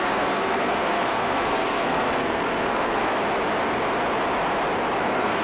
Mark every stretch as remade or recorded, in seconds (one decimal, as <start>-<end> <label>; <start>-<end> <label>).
0.0-3.1 remade; 3.1-5.0 recorded; 5.0-5.4 remade